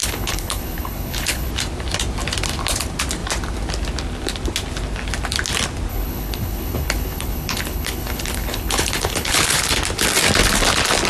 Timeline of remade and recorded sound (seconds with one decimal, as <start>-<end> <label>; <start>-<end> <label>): 0.0-1.5 remade; 1.5-5.9 recorded; 5.9-9.6 remade; 9.6-11.1 recorded